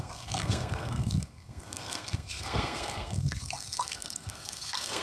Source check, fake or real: fake